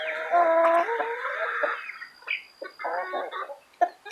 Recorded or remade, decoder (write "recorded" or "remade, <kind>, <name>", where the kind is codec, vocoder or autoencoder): recorded